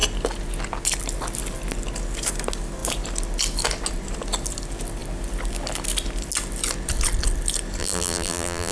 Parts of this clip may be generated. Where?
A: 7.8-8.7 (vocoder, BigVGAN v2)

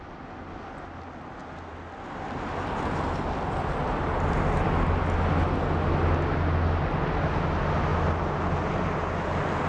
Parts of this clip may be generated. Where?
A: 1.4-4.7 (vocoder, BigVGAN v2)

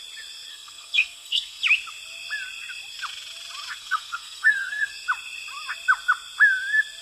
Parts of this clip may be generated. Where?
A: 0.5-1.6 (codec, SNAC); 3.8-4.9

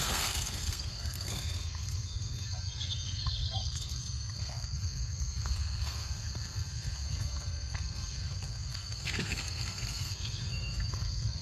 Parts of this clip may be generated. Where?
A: 0.0-11.4 (codec, SNAC)